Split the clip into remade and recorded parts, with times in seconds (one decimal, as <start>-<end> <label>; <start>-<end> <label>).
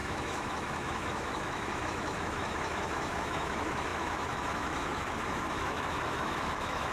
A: 0.0-6.9 remade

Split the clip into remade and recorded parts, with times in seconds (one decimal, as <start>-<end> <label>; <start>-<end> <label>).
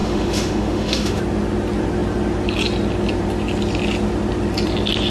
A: 0.0-1.2 remade; 1.2-5.1 recorded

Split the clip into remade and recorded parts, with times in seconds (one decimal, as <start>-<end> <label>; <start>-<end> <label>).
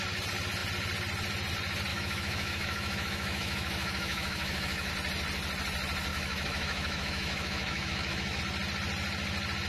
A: 0.0-1.9 recorded; 1.9-4.9 remade; 4.9-6.1 recorded; 6.1-8.4 remade; 8.4-9.7 recorded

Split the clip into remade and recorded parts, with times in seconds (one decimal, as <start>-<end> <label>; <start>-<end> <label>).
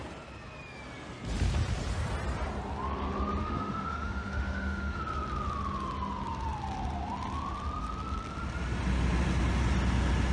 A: 0.0-3.4 recorded; 3.4-5.0 remade; 5.0-10.3 recorded